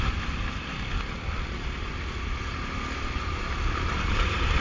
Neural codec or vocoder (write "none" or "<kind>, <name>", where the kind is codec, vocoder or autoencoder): none